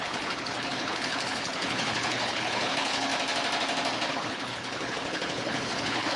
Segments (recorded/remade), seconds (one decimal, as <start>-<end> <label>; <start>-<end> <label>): 0.0-3.1 remade; 3.1-4.1 recorded; 4.1-6.2 remade